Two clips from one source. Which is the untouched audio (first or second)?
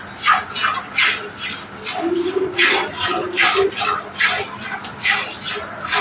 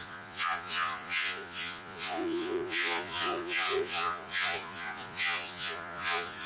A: first